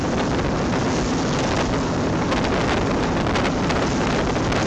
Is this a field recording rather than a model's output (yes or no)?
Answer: yes